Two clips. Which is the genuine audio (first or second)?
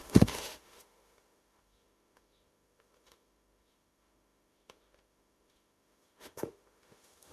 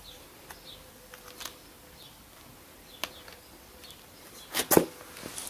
second